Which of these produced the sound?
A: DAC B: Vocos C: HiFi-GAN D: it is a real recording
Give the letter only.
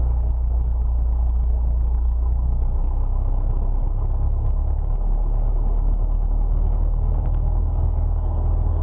A